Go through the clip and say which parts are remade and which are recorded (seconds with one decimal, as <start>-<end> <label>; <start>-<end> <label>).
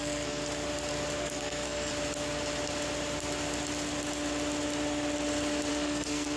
0.0-0.4 remade; 0.4-1.2 recorded; 1.2-1.9 remade; 1.9-5.7 recorded; 5.7-6.4 remade